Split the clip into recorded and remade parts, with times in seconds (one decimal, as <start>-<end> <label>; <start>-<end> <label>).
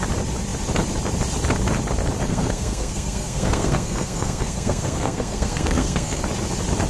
0.0-2.2 recorded; 2.2-6.2 remade; 6.2-6.9 recorded